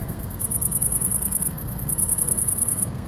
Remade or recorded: remade